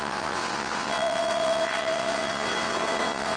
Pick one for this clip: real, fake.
fake